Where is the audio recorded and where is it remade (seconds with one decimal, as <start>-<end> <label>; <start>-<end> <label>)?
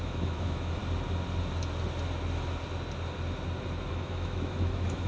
0.0-0.8 remade; 0.8-3.9 recorded; 3.9-5.1 remade